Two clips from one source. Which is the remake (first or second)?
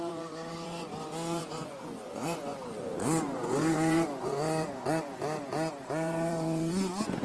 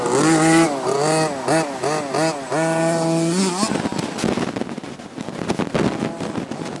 first